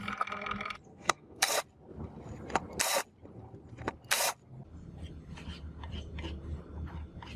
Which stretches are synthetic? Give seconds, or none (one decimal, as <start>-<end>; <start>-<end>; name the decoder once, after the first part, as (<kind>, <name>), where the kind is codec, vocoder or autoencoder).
0.9-1.5 (codec, SNAC)